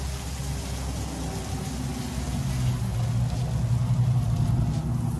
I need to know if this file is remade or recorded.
recorded